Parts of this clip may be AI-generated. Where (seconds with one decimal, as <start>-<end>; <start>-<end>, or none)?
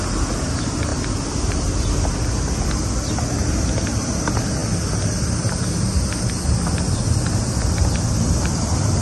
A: 3.4-4.1